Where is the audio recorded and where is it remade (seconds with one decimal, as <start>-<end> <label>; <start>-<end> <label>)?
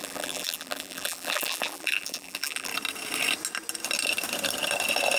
0.0-2.7 remade; 2.7-5.2 recorded